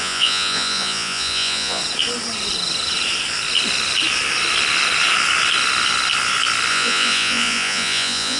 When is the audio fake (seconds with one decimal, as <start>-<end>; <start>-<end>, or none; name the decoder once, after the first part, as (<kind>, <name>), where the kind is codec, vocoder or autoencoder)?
0.0-1.8 (vocoder, Vocos); 6.7-8.4